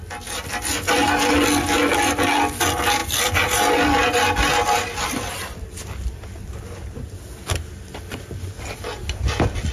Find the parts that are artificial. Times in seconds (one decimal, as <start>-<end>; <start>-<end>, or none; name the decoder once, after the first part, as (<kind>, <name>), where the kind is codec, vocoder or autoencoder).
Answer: 3.0-3.6 (vocoder, BigVGAN v2)